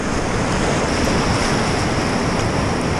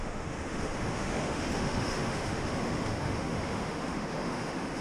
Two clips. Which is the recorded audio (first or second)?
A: first